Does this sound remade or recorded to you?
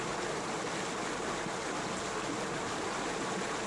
recorded